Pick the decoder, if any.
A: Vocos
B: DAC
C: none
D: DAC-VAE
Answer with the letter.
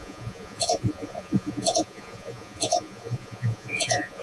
A